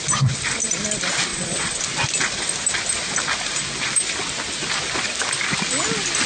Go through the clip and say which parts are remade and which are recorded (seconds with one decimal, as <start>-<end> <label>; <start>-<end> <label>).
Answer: 0.0-1.3 recorded; 1.3-1.8 remade; 1.8-6.3 recorded